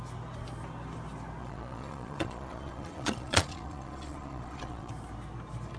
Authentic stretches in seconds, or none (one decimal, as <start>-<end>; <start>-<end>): 0.0-1.4; 4.9-5.8